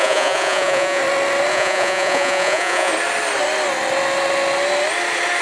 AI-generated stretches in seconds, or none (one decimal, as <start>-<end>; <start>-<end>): 0.0-1.0; 1.5-2.9